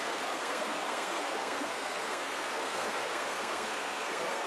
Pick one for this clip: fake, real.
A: fake